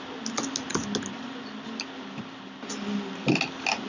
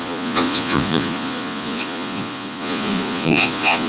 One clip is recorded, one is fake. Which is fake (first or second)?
second